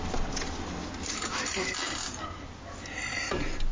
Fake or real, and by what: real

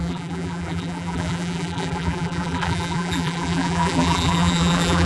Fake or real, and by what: fake, vocoder, BigVGAN v2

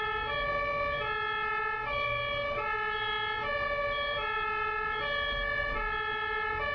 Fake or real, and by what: real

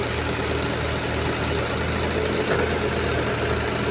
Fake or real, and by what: real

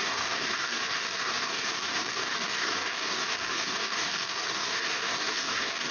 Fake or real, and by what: fake, codec, DAC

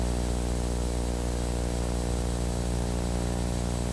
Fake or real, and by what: real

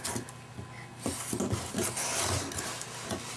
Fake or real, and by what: real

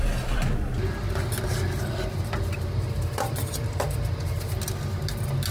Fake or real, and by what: real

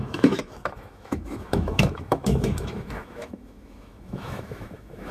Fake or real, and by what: fake, autoencoder, DAC-VAE